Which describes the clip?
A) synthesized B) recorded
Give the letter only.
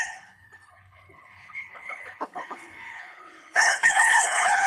A